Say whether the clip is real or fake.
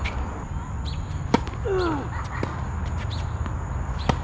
real